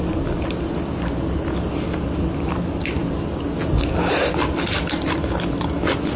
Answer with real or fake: real